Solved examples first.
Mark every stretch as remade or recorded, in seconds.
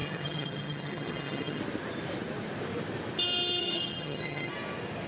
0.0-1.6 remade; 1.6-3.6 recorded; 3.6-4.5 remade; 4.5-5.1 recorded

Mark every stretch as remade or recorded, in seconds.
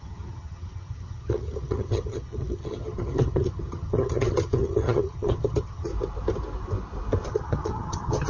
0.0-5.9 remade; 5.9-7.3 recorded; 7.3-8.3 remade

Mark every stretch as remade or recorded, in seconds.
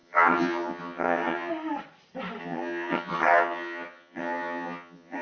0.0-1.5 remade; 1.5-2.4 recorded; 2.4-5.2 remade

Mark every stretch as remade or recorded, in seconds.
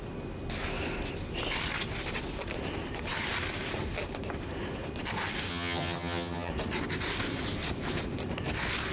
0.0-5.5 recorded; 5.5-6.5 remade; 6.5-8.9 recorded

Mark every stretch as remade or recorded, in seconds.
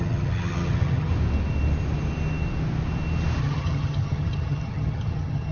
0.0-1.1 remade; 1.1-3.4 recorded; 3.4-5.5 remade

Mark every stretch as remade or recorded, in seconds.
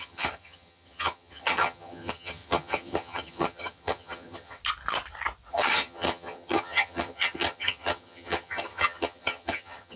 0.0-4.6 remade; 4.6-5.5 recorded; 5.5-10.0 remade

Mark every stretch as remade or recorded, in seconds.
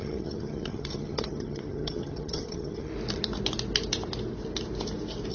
0.0-2.9 remade; 2.9-5.3 recorded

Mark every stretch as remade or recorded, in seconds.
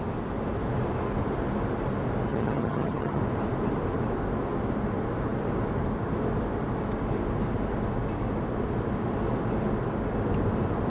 0.0-2.3 recorded; 2.3-3.2 remade; 3.2-10.9 recorded